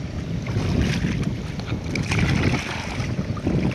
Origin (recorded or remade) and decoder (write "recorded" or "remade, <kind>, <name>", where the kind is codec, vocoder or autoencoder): recorded